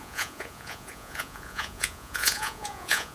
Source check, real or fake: fake